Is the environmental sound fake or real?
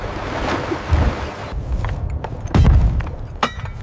real